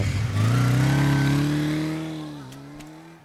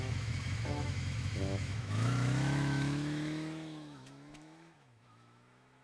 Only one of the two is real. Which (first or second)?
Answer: first